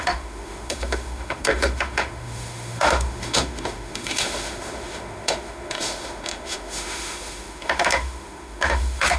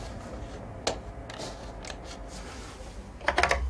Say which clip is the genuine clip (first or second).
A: second